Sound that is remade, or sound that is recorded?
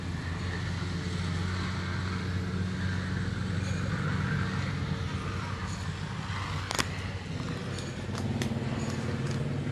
recorded